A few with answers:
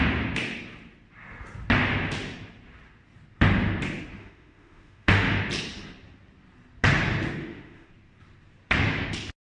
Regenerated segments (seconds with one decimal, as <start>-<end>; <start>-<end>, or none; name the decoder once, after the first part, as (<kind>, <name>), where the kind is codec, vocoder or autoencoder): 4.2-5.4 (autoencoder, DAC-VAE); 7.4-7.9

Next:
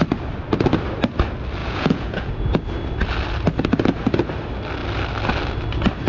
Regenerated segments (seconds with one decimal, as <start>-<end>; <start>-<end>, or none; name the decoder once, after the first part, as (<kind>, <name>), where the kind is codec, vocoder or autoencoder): 1.6-2.3 (vocoder, Vocos)

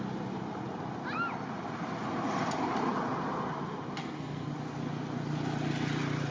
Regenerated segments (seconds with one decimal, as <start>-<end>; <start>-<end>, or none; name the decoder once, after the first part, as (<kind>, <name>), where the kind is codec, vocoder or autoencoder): 4.0-4.5 (codec, SNAC)

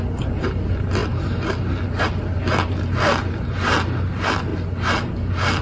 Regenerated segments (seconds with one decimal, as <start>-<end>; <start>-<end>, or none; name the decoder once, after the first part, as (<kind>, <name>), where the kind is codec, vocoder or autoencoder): none